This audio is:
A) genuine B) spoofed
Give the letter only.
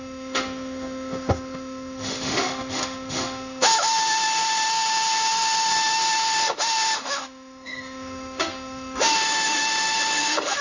B